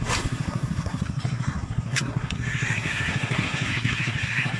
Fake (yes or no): yes